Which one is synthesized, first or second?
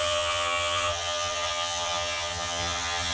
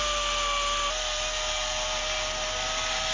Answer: first